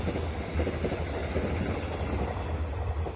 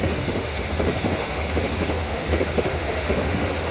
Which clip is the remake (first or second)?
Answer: second